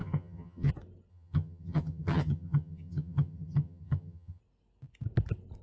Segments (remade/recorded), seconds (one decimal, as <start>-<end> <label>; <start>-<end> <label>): 0.0-0.7 remade; 0.7-1.1 recorded; 1.1-4.4 remade; 4.4-5.6 recorded

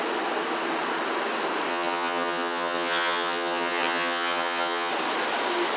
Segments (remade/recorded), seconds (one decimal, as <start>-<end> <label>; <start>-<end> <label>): 0.0-1.7 recorded; 1.7-4.9 remade; 4.9-5.8 recorded